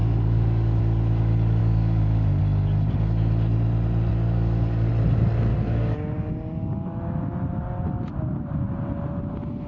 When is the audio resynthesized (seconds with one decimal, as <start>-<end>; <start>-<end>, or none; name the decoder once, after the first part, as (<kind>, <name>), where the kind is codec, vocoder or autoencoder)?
0.0-0.8 (codec, DAC); 1.6-2.4; 4.1-4.9; 5.5-6.3